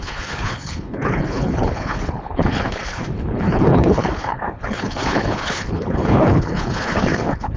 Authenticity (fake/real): fake